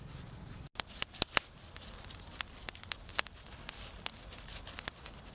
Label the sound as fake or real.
real